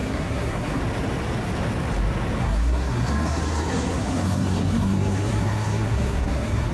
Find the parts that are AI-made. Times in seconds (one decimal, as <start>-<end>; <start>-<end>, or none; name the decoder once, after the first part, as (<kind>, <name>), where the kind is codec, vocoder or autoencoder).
0.0-0.8 (codec, SNAC); 2.4-6.7